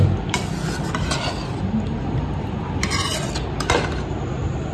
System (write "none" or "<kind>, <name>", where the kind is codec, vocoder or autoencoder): none